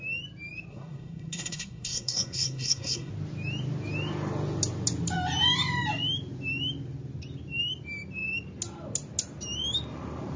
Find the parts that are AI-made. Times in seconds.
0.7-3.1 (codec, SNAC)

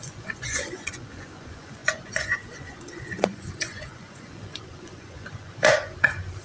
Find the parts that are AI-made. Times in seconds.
0.0-6.4 (vocoder, Vocos)

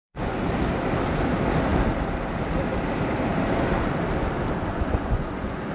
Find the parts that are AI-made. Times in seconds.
0.0-0.5 (vocoder, Vocos); 4.7-5.7

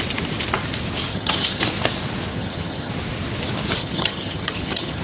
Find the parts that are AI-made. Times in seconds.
1.1-1.6 (vocoder, HiFi-GAN); 2.3-2.9; 3.8-5.0

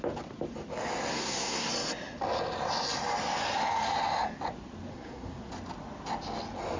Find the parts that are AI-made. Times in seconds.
1.1-1.7 (codec, SNAC); 4.9-5.5

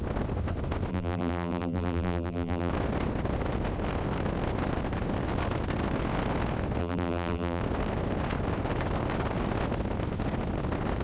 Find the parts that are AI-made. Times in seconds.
0.9-2.7 (vocoder, BigVGAN v2); 6.8-7.6

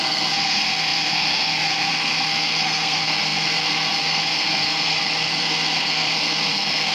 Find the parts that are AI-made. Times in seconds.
0.0-6.9 (codec, SNAC)